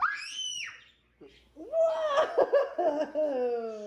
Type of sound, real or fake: real